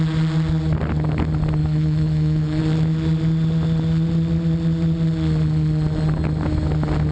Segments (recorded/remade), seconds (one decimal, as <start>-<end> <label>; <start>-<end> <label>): 0.0-1.6 recorded; 1.6-2.6 remade; 2.6-7.1 recorded